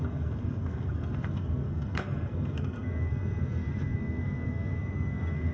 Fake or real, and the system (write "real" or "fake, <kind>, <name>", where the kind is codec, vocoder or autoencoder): fake, codec, SNAC